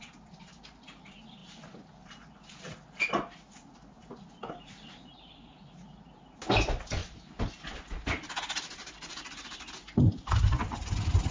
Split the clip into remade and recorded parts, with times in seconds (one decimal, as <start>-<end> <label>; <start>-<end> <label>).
0.0-4.4 recorded; 4.4-5.5 remade; 5.5-11.3 recorded